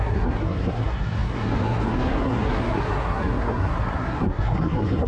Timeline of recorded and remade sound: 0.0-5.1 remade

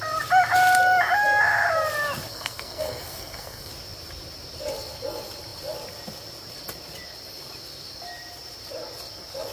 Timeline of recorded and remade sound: 0.0-2.3 recorded; 2.3-3.7 remade; 3.7-9.5 recorded

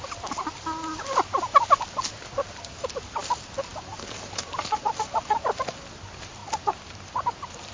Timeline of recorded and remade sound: 0.0-7.7 recorded

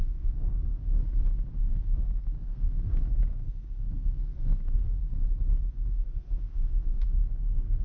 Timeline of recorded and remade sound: 0.0-1.0 remade; 1.0-1.6 recorded; 1.6-5.0 remade; 5.0-5.7 recorded; 5.7-7.8 remade

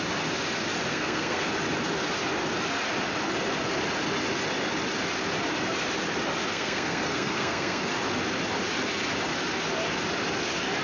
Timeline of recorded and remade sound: 0.0-0.9 recorded; 0.9-1.5 remade; 1.5-6.5 recorded; 6.5-7.9 remade; 7.9-10.8 recorded